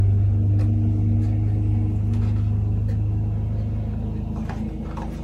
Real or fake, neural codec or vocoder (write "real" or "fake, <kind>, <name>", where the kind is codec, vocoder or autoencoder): real